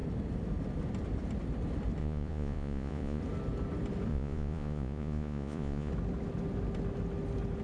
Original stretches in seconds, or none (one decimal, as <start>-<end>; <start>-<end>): 0.0-2.0; 3.2-4.1; 5.9-7.6